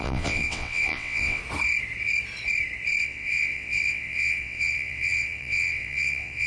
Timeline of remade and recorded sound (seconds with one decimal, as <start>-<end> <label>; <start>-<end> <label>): 0.0-1.4 remade; 1.4-3.0 recorded; 3.0-6.5 remade